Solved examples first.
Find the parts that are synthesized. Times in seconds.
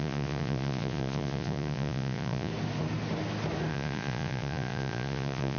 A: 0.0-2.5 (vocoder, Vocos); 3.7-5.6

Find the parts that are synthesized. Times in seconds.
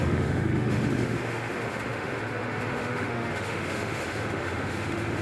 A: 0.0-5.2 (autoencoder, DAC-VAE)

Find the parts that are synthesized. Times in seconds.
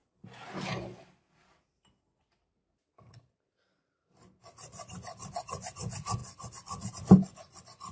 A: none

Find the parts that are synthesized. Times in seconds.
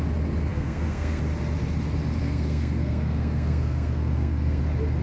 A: 0.5-1.2 (codec, SNAC); 2.2-4.6